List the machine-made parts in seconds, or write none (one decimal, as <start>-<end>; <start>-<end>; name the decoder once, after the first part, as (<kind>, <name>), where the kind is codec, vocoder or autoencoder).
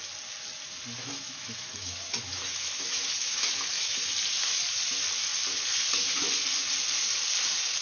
1.0-4.1 (autoencoder, DAC-VAE)